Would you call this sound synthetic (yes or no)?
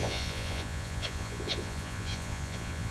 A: yes